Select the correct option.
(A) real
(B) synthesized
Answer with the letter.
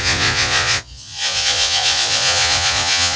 B